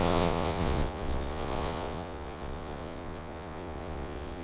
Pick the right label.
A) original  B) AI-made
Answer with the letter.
B